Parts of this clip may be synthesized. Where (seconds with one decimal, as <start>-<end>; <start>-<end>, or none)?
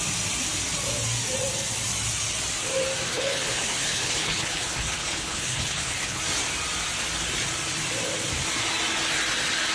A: 3.1-6.2